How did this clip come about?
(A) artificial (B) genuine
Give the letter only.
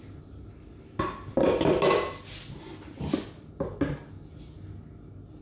B